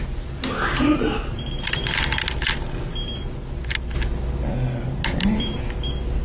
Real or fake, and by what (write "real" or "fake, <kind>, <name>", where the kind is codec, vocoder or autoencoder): real